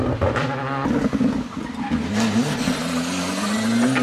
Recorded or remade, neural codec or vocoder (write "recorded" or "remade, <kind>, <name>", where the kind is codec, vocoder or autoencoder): recorded